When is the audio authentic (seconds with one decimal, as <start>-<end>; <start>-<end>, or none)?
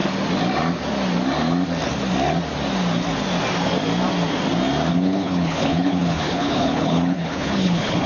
0.0-4.9